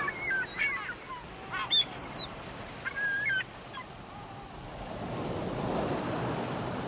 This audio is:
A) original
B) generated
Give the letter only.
A